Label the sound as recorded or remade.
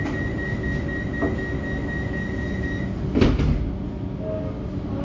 recorded